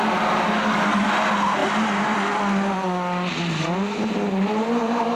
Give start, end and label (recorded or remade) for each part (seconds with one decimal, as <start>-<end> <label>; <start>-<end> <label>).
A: 0.0-0.6 recorded; 0.6-1.1 remade; 1.1-5.2 recorded